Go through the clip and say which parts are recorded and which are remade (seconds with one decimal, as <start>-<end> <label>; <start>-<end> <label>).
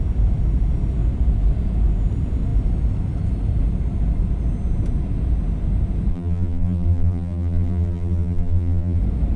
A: 0.0-6.1 recorded; 6.1-9.0 remade; 9.0-9.4 recorded